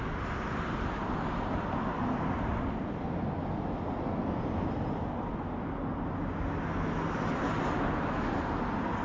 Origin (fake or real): real